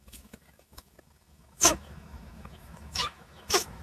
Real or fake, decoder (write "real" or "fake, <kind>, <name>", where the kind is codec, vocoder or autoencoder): fake, autoencoder, DAC-VAE